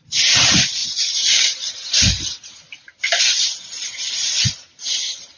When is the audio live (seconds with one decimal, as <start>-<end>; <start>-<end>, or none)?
0.0-5.4

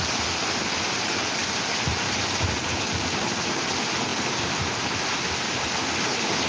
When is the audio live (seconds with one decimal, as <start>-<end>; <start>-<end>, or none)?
0.0-6.5

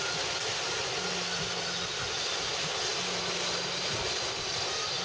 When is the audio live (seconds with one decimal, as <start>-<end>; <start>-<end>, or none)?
0.0-5.0

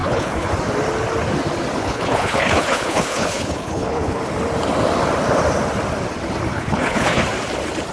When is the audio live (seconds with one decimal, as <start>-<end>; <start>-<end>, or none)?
0.5-1.8; 4.2-6.5; 7.2-7.9

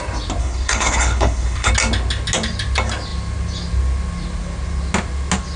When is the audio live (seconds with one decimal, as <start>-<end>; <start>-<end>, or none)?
0.0-0.4; 1.7-5.6

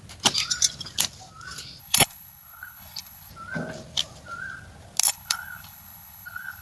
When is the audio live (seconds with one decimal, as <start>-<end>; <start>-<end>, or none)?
0.0-1.8; 3.3-5.0

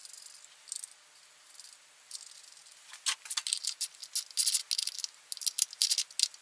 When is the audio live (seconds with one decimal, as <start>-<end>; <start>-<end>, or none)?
0.0-6.4